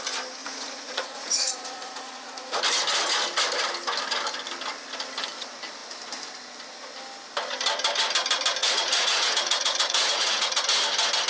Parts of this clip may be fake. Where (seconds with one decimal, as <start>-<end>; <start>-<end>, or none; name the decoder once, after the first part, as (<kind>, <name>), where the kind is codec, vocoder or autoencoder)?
0.4-2.6 (vocoder, Vocos); 8.6-10.6